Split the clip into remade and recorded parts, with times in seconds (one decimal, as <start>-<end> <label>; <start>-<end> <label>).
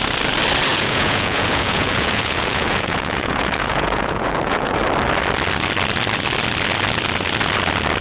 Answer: 0.0-0.7 recorded; 0.7-4.8 remade; 4.8-8.0 recorded